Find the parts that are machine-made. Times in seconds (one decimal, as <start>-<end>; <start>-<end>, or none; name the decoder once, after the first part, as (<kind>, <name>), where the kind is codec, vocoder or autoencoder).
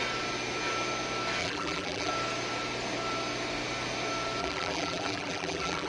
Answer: 1.4-2.1 (vocoder, BigVGAN v2); 4.4-5.9